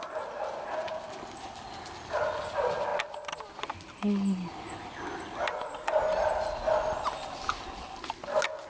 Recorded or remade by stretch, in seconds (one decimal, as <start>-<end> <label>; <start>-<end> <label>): 0.0-8.7 recorded